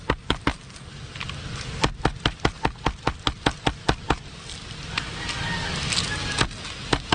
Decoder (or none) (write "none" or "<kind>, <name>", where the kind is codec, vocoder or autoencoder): none